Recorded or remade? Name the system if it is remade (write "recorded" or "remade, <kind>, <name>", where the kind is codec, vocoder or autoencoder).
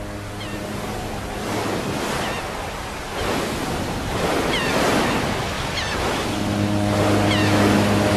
recorded